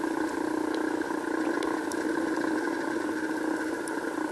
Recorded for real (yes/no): yes